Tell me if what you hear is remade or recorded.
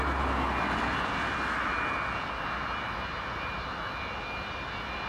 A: recorded